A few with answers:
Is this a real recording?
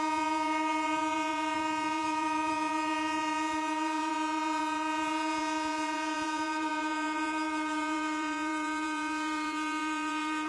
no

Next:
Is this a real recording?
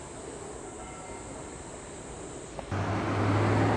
yes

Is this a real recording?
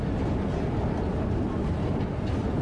yes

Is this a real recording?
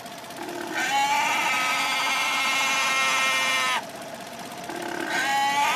yes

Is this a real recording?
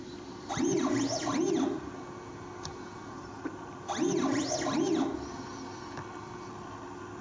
yes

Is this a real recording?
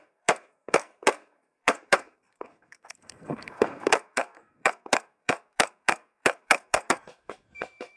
no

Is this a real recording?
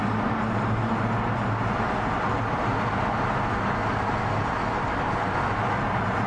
yes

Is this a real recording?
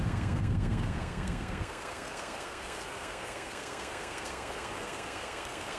no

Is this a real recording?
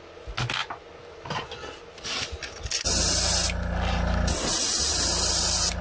yes